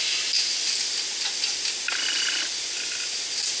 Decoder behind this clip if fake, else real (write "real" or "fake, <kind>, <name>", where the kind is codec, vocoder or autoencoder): real